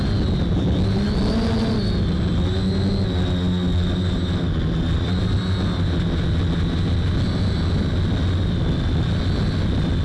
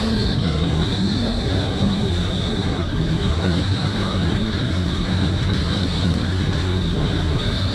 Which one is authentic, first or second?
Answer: first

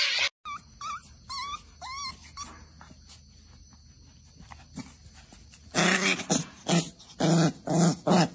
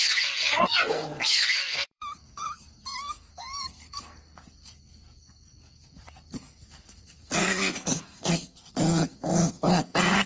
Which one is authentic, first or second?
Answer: first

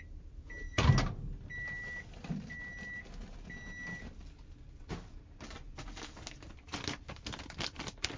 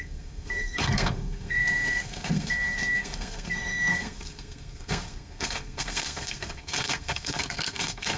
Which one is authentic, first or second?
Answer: first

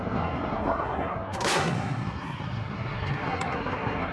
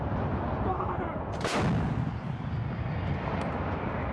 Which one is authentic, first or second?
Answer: second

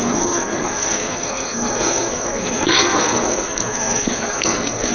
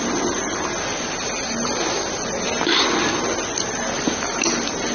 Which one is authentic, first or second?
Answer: second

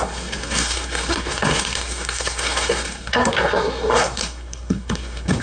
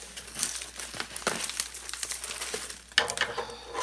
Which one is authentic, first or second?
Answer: second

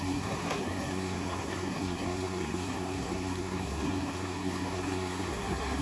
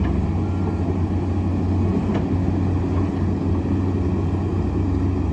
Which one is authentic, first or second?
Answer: second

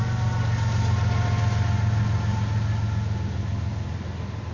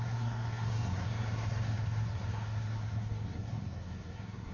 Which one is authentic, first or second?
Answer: first